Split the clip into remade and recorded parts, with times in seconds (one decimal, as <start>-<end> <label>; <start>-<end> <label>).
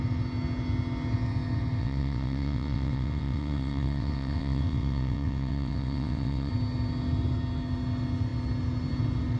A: 0.0-1.8 recorded; 1.8-6.5 remade; 6.5-9.4 recorded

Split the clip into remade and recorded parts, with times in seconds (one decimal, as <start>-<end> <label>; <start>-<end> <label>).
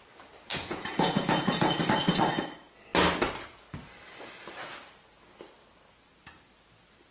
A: 0.0-0.5 recorded; 0.5-1.8 remade; 1.8-7.1 recorded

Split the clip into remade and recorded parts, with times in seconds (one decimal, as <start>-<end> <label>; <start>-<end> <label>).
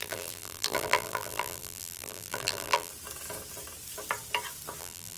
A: 0.0-2.9 remade; 2.9-4.8 recorded; 4.8-5.2 remade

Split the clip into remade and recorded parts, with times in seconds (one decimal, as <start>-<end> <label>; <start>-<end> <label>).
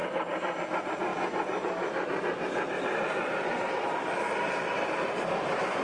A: 0.0-5.8 recorded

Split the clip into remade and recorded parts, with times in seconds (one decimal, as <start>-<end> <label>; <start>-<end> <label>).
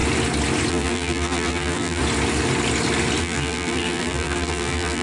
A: 0.0-0.7 recorded; 0.7-2.0 remade; 2.0-3.2 recorded; 3.2-5.0 remade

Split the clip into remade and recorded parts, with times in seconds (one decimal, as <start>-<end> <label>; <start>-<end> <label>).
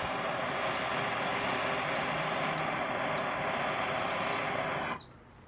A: 0.0-5.5 recorded